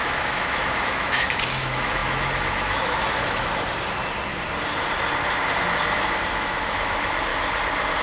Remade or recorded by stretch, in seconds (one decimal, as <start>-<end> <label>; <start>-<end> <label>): 0.0-3.5 remade; 3.5-6.3 recorded; 6.3-7.3 remade; 7.3-8.0 recorded